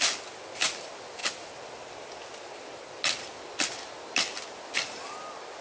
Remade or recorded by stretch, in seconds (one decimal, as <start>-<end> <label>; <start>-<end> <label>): 0.0-5.6 recorded